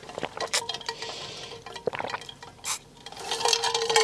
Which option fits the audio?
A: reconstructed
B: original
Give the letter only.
A